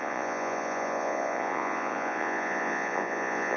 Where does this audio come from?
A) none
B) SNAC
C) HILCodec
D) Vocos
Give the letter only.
D